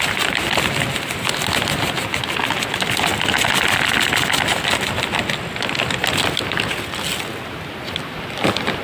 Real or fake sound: real